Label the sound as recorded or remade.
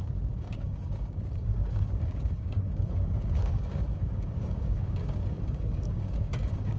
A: remade